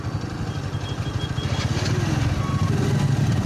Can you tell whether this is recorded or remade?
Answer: recorded